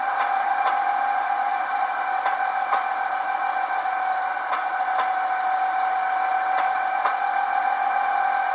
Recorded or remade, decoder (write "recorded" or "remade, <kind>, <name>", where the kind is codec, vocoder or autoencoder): recorded